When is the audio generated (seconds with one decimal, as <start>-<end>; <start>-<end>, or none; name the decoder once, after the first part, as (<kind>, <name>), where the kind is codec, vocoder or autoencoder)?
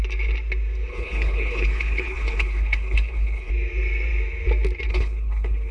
0.9-3.5 (codec, HILCodec); 4.9-5.7